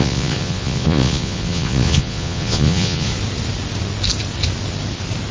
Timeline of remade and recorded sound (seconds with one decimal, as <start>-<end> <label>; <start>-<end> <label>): 0.0-3.1 remade; 3.1-5.3 recorded